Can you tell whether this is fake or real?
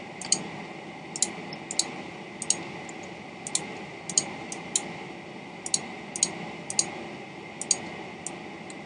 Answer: real